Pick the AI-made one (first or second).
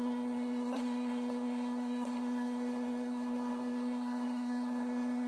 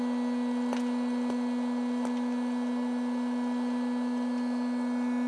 first